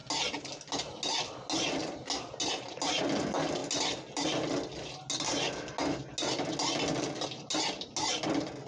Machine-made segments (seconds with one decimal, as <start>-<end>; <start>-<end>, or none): none